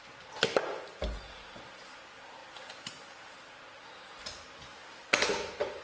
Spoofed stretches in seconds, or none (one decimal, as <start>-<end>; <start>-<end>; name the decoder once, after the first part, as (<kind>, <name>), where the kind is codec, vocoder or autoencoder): none